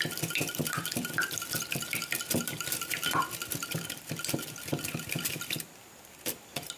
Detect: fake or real fake